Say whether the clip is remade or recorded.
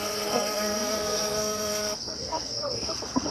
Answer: remade